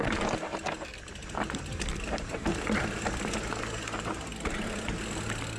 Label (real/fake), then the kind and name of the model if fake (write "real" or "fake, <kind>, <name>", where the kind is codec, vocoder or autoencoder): real